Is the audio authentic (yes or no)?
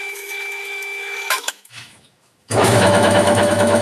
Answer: no